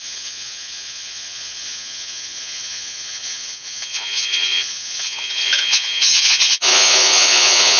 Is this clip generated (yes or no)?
yes